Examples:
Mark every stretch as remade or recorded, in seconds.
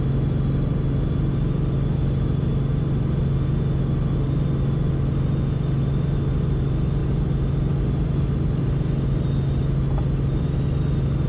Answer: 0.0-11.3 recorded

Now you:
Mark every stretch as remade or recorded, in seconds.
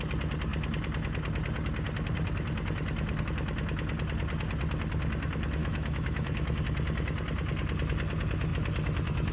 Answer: 0.0-5.6 recorded; 5.6-6.6 remade; 6.6-9.3 recorded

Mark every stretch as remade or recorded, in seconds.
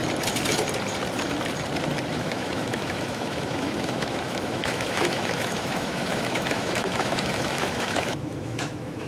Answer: 0.0-2.1 recorded; 2.1-9.1 remade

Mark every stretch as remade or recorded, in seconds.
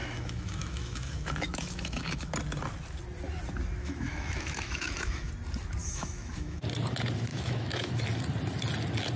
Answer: 0.0-2.3 remade; 2.3-3.8 recorded; 3.8-5.3 remade; 5.3-5.8 recorded; 5.8-6.6 remade; 6.6-7.3 recorded; 7.3-7.9 remade; 7.9-9.2 recorded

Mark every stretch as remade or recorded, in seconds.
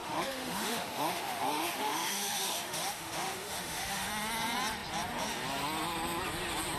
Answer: 0.0-4.1 remade; 4.1-6.8 recorded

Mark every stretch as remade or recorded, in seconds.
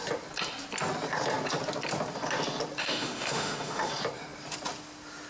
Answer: 0.0-2.8 recorded; 2.8-3.9 remade; 3.9-5.3 recorded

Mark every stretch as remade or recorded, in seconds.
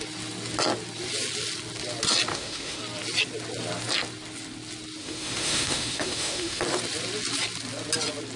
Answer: 0.0-2.3 recorded; 2.3-2.8 remade; 2.8-5.0 recorded; 5.0-6.6 remade; 6.6-8.4 recorded